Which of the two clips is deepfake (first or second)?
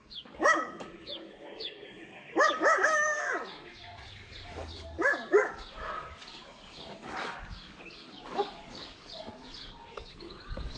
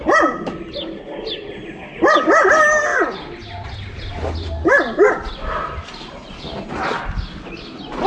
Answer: first